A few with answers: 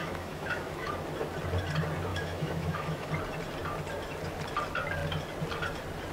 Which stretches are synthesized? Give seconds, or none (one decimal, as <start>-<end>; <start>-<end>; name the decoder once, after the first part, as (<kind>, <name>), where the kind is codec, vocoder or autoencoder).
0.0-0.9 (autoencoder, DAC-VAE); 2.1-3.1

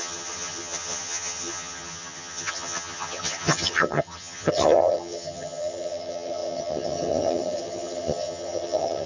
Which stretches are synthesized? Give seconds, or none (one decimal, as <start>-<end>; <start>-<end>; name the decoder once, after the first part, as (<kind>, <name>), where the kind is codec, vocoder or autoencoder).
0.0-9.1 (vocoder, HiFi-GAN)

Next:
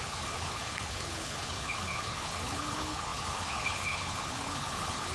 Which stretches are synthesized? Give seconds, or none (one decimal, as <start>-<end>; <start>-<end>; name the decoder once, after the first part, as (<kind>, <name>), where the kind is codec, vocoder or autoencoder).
0.0-5.1 (codec, HILCodec)

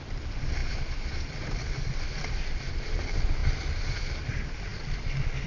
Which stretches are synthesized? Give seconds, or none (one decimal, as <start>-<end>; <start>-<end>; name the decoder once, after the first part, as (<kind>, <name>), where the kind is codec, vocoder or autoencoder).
none